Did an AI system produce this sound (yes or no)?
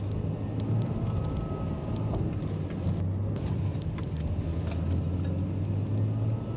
no